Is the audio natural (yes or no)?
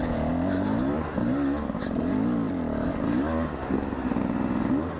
yes